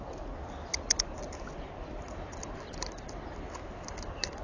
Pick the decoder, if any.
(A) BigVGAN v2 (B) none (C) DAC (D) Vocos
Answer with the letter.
B